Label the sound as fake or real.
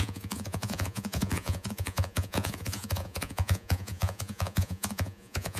fake